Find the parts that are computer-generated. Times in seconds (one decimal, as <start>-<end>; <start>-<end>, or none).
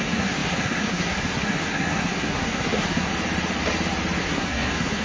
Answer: 0.0-3.1; 4.2-5.0